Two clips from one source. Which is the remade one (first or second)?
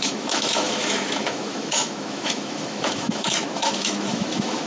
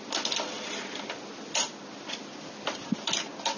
first